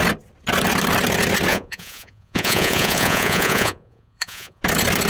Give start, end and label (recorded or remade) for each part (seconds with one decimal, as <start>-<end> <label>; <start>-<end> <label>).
0.0-1.5 recorded; 1.5-4.6 remade; 4.6-5.1 recorded